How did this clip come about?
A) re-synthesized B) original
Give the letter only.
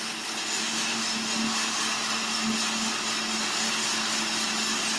B